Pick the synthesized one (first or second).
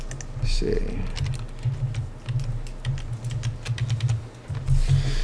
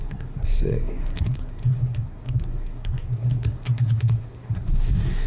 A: second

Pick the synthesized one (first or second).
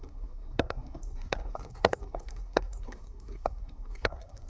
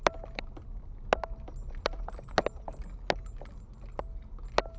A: first